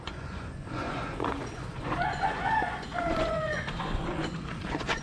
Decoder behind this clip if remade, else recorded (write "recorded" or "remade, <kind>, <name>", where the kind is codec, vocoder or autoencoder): remade, vocoder, Vocos